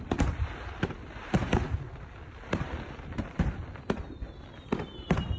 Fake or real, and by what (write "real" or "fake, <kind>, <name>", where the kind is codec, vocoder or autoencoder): real